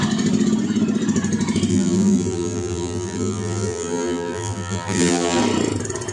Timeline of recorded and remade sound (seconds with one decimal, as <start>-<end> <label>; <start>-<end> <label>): 0.0-1.7 recorded; 1.7-5.4 remade; 5.4-6.1 recorded